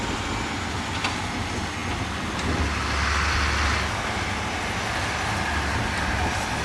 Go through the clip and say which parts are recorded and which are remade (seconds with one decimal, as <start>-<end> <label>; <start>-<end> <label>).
0.0-6.6 recorded